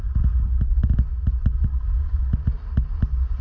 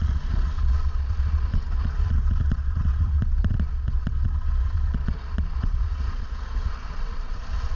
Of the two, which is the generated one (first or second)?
second